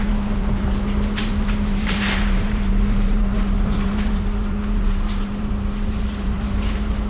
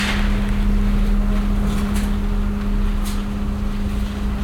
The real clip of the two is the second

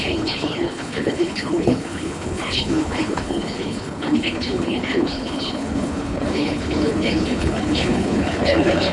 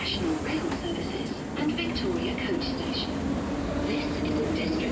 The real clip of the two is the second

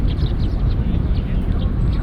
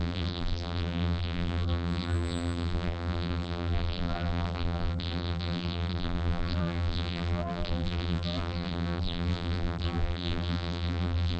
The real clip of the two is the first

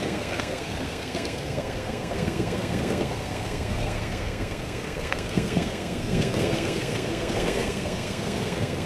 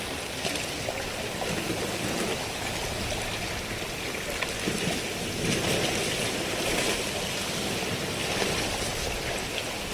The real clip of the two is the second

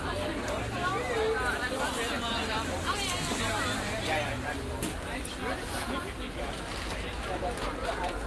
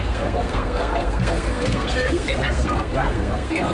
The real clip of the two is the first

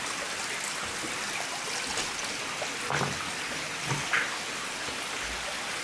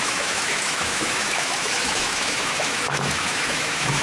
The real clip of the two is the first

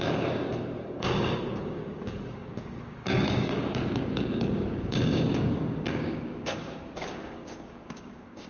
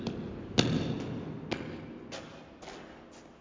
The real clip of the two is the second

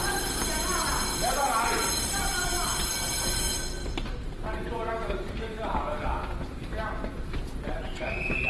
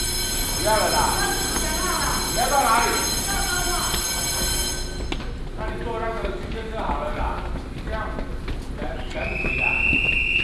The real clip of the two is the second